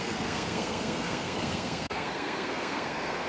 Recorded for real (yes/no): no